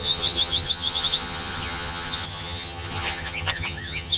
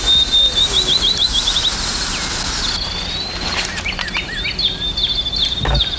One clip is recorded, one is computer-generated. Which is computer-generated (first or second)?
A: first